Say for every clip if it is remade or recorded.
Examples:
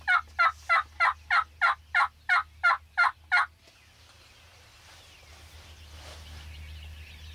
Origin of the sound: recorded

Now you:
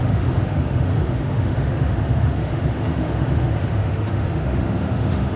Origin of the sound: remade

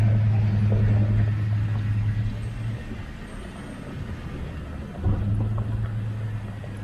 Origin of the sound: recorded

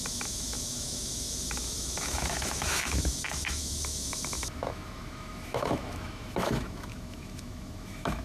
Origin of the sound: remade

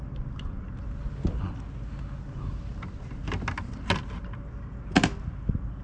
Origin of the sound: recorded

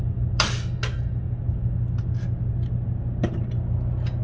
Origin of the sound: recorded